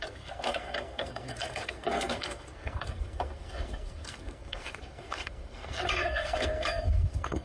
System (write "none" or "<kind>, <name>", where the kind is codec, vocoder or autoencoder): codec, SNAC